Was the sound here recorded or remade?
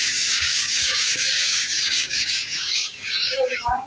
remade